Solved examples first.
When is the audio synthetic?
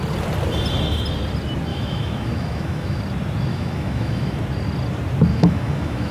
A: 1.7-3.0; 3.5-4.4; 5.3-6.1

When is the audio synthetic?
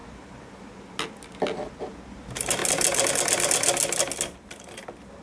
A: none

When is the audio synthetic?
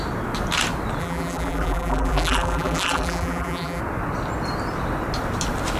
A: 1.0-3.8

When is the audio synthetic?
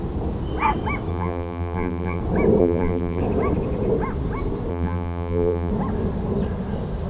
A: 1.1-2.2; 2.6-3.2; 4.7-5.7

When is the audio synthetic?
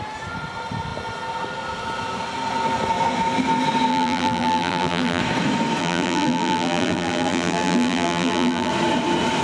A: 3.9-5.2; 5.8-8.7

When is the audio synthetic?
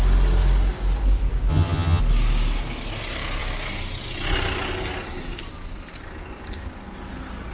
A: 1.5-2.0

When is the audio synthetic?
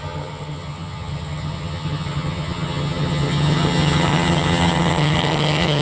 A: 0.0-5.8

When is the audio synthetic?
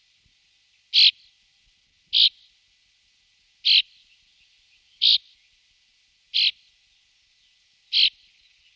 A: 4.0-5.2